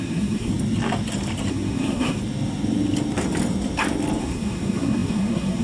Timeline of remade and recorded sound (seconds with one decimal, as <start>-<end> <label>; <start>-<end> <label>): 0.0-0.5 remade; 0.5-1.5 recorded; 1.5-2.2 remade; 2.2-4.2 recorded; 4.2-5.6 remade